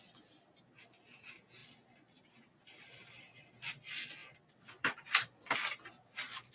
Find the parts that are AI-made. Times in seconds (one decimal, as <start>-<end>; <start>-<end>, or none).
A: 1.6-3.2; 4.2-6.5

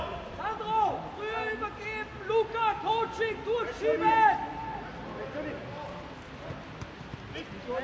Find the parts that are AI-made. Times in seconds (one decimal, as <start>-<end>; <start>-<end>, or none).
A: none

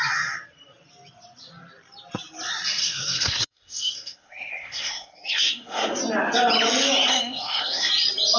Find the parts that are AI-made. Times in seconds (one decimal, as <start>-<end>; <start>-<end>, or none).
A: 2.8-6.0; 7.1-7.9

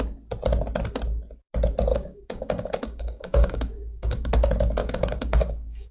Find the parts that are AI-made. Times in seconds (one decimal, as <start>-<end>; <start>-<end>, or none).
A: 1.9-4.3; 4.8-5.9

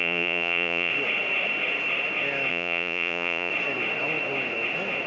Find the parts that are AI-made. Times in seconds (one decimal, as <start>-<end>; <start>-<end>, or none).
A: 0.0-0.9; 2.5-3.5

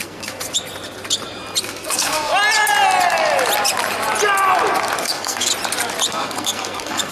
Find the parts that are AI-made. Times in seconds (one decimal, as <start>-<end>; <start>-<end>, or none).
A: 0.0-0.4; 1.6-2.3; 5.0-5.5; 6.1-7.1

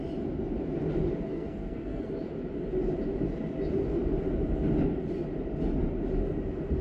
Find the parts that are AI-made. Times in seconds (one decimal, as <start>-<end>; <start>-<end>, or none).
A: 1.3-2.1

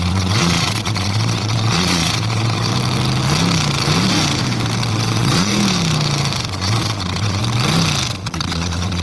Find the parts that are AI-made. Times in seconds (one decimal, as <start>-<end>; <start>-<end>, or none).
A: 0.0-2.7; 4.9-5.5; 6.5-7.4; 8.1-9.0